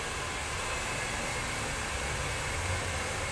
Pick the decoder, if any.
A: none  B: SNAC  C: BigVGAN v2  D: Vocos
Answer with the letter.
A